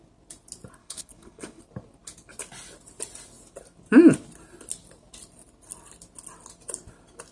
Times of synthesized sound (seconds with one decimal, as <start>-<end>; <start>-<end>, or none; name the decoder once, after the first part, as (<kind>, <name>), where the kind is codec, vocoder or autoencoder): 0.8-1.6 (codec, HILCodec)